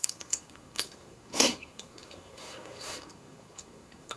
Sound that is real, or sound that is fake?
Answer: fake